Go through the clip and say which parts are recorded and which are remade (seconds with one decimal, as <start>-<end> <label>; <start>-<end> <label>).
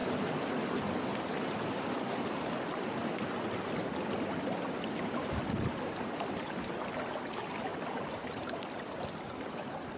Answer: 0.0-1.2 remade; 1.2-7.7 recorded; 7.7-10.0 remade